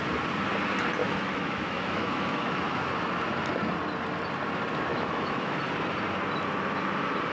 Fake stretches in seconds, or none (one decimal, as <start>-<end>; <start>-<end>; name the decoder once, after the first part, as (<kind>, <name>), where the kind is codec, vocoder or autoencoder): 1.0-2.9 (autoencoder, DAC-VAE); 4.9-5.6